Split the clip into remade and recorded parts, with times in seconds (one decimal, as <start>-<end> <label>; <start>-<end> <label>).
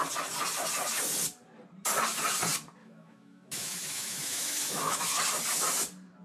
0.0-2.8 recorded; 2.8-5.2 remade; 5.2-6.2 recorded